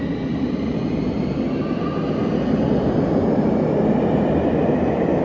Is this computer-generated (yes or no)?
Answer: no